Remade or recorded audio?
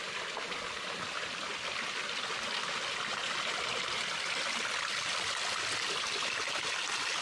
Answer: recorded